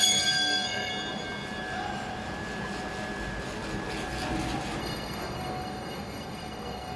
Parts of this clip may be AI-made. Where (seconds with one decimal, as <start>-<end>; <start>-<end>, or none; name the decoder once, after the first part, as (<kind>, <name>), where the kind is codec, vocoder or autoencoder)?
0.0-0.9 (codec, SNAC); 4.8-7.0